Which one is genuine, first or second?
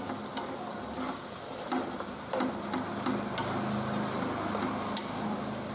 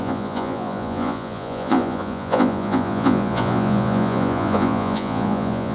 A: first